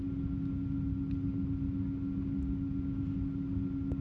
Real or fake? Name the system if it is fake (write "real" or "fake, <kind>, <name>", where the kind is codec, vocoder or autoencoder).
real